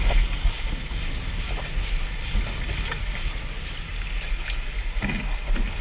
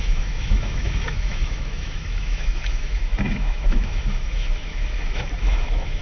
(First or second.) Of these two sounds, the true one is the first